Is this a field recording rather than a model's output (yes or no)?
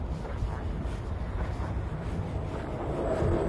yes